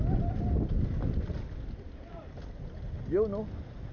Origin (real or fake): real